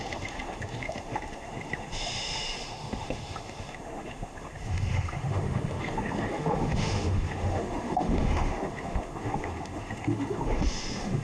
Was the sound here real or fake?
fake